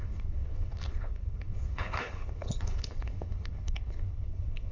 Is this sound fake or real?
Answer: fake